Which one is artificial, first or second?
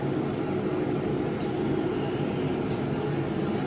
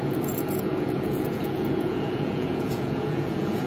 second